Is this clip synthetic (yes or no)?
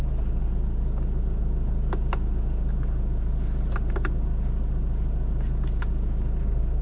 no